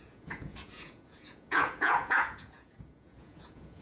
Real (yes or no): no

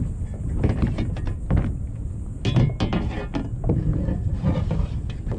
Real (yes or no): yes